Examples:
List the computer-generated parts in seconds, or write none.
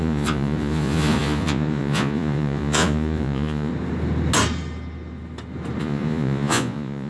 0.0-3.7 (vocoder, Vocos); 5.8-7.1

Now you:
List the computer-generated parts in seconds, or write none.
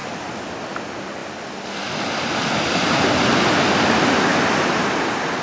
none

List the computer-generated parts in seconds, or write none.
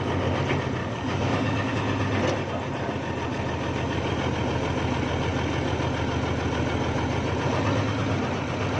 0.8-1.7 (codec, DAC)